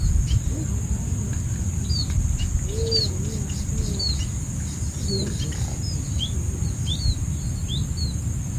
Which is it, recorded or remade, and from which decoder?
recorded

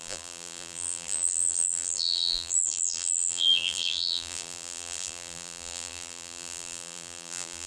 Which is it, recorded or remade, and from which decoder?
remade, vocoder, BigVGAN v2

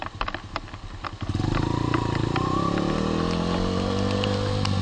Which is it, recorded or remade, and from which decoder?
recorded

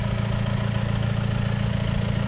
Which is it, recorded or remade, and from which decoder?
recorded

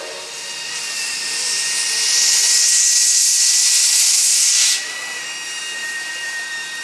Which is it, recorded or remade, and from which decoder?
recorded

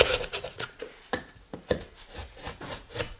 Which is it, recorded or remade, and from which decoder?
remade, vocoder, Vocos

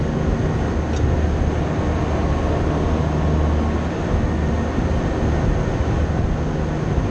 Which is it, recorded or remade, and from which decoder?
recorded